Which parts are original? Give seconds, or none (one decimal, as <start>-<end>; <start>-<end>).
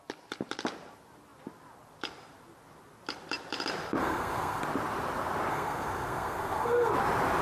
0.0-4.0; 4.6-5.5; 6.9-7.4